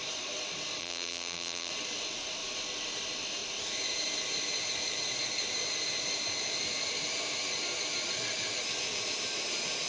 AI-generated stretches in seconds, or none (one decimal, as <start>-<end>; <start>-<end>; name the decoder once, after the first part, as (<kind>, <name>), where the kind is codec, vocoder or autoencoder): 0.8-1.7 (vocoder, BigVGAN v2)